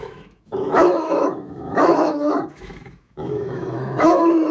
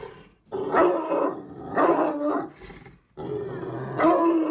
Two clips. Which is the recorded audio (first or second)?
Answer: second